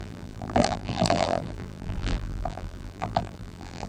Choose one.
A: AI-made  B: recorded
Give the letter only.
A